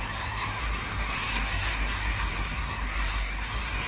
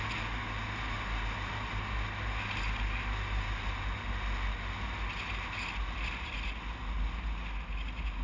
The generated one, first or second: first